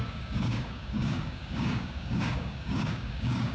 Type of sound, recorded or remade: remade